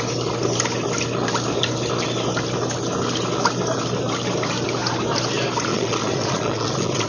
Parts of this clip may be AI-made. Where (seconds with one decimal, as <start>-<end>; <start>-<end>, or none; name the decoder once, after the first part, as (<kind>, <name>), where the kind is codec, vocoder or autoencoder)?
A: 5.7-7.1 (vocoder, Vocos)